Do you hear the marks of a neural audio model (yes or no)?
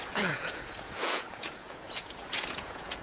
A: yes